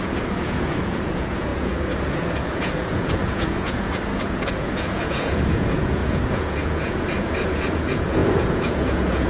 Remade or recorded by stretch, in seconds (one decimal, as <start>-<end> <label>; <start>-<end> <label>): 0.0-9.3 remade